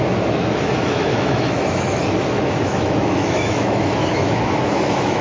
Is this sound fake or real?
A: fake